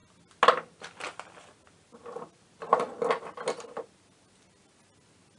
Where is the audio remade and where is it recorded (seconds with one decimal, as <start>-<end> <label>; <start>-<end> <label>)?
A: 0.0-5.4 recorded